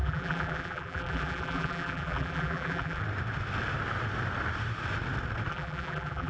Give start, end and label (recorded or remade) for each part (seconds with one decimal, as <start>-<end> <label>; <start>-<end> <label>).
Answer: 0.0-3.0 remade; 3.0-5.5 recorded; 5.5-6.3 remade